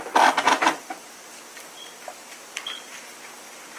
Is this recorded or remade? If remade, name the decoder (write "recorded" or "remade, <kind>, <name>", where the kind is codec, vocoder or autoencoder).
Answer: recorded